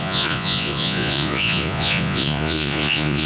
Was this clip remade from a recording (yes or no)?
yes